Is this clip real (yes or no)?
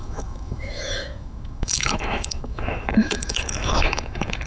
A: no